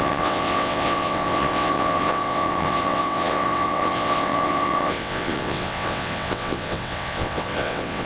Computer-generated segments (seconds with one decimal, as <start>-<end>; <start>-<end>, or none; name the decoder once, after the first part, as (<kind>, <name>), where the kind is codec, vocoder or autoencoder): 0.0-8.1 (vocoder, WaveNeXt)